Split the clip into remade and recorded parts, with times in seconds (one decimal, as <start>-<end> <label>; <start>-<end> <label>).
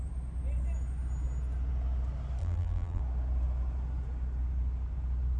0.0-2.4 recorded; 2.4-3.0 remade; 3.0-5.4 recorded